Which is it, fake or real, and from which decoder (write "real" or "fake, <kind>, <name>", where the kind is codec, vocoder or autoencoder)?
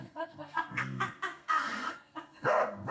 fake, codec, SNAC